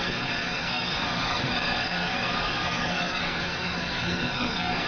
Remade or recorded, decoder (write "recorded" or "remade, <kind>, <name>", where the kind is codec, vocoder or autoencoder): remade, codec, SNAC